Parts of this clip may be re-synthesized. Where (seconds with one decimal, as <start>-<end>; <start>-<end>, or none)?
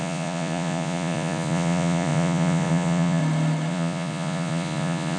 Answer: 0.0-3.2; 3.7-5.2